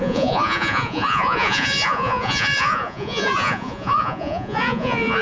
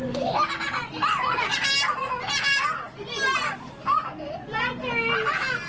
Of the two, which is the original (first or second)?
second